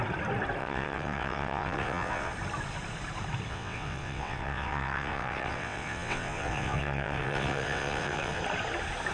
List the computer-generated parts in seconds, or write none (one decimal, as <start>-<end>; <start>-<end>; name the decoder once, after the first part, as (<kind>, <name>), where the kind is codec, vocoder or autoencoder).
0.6-2.3 (vocoder, WaveNeXt); 3.5-8.4